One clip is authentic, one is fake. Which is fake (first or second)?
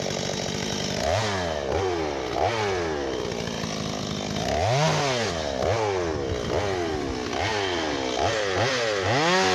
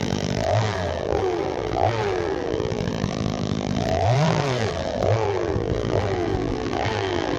second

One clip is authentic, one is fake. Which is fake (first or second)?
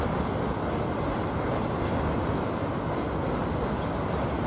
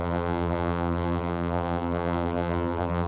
second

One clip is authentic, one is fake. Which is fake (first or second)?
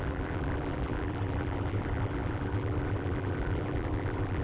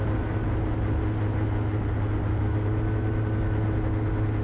first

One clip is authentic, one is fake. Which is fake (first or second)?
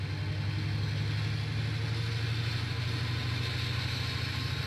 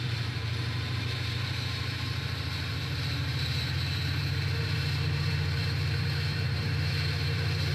second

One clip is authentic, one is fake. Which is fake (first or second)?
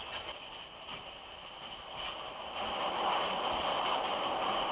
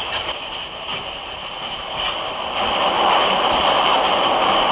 second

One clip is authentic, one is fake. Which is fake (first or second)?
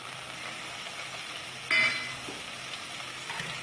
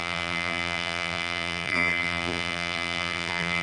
second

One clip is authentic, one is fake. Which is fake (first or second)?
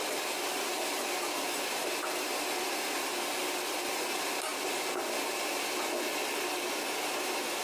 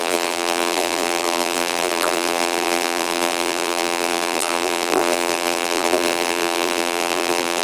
second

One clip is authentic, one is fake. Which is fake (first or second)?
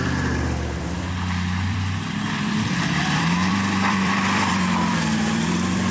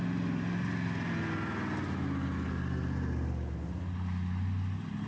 first